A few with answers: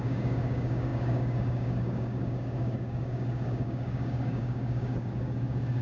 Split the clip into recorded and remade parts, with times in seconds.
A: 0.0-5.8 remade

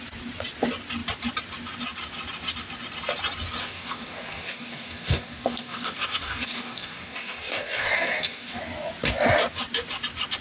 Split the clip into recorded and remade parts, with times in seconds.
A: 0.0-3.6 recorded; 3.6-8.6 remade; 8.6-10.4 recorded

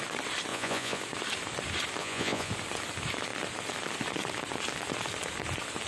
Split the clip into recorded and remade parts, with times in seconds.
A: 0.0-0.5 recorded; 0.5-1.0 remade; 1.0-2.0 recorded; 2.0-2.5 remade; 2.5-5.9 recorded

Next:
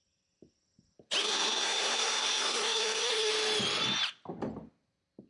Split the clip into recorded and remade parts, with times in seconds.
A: 0.0-1.2 recorded; 1.2-3.3 remade; 3.3-5.3 recorded